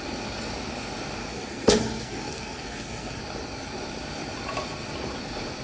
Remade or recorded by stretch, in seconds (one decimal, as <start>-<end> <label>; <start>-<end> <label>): 0.0-1.3 recorded; 1.3-3.2 remade; 3.2-5.6 recorded